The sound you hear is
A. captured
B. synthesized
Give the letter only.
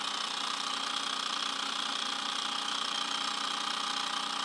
A